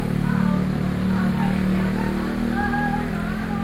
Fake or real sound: real